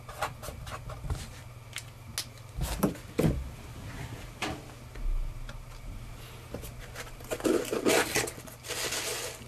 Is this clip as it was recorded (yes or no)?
yes